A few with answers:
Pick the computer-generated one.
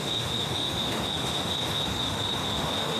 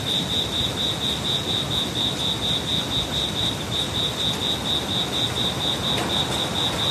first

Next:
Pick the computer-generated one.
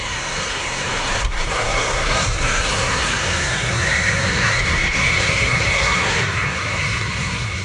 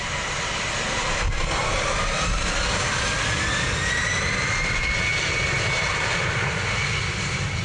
first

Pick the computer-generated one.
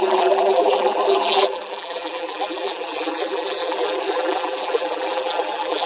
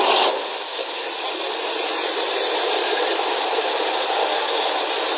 first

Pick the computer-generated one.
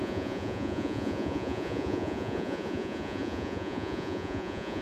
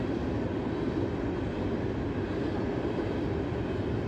first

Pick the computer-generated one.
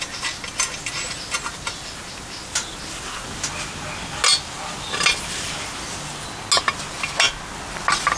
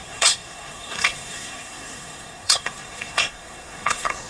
second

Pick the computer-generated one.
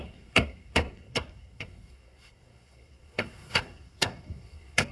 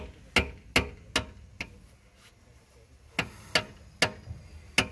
first